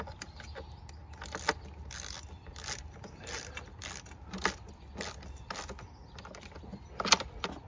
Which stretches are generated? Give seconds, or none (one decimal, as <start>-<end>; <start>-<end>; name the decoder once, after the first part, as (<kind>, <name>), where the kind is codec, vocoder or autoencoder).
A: none